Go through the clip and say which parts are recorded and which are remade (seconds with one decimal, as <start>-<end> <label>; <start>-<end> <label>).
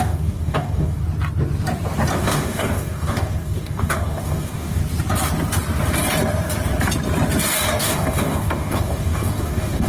0.0-1.0 remade; 1.0-2.2 recorded; 2.2-4.8 remade; 4.8-7.8 recorded; 7.8-9.9 remade